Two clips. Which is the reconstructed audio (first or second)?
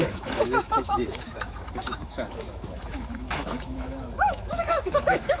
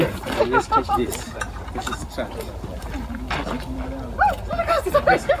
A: first